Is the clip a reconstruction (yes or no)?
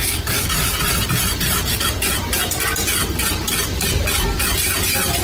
no